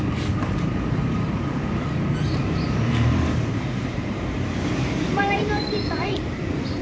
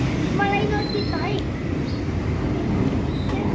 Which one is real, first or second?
second